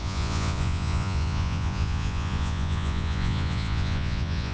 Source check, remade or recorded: remade